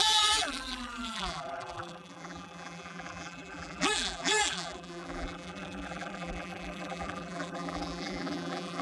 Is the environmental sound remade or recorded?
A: remade